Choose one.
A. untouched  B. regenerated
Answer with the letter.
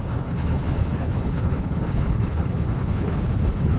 B